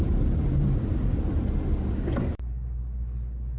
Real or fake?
real